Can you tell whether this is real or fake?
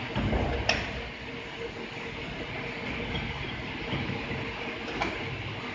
real